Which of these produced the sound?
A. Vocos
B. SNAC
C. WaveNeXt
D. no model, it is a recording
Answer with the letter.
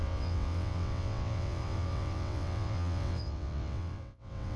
C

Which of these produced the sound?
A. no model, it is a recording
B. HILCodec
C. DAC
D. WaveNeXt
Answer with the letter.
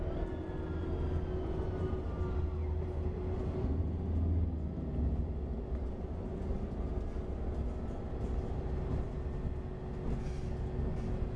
A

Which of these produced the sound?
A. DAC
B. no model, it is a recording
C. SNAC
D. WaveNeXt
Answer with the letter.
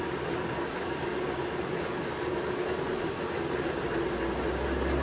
B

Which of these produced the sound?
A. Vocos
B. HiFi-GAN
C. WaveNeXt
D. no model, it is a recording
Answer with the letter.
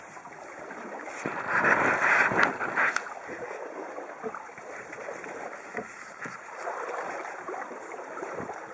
D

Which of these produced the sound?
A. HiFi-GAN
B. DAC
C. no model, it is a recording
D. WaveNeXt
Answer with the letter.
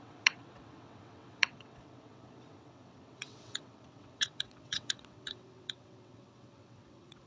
D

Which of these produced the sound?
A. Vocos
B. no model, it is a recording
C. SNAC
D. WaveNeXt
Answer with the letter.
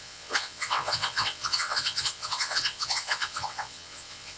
D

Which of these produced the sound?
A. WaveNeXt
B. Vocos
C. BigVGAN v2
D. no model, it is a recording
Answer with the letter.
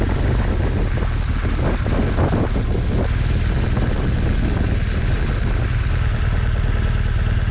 D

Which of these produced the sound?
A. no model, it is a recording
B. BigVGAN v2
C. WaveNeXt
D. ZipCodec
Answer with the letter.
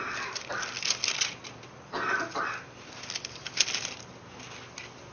A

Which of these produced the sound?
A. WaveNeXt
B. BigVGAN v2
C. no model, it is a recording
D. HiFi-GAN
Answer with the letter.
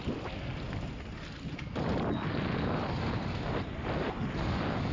C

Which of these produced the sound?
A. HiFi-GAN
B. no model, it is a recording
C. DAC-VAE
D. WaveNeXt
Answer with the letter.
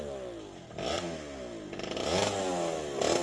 B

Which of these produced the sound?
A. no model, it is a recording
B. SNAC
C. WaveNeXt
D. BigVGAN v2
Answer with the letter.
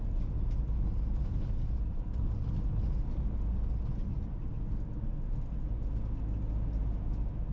A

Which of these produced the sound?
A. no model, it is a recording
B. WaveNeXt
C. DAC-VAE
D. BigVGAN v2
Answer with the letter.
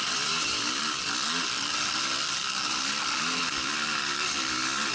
A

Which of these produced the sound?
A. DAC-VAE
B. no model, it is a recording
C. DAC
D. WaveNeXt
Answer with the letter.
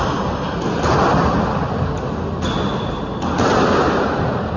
B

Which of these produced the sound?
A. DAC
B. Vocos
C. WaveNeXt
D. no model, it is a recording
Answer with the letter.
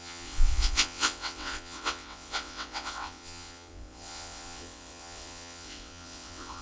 C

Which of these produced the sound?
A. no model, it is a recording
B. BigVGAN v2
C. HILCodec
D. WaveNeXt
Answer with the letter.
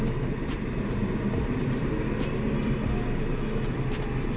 A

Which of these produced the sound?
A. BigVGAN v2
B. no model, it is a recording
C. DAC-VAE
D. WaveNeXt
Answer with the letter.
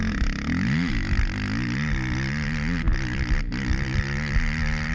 B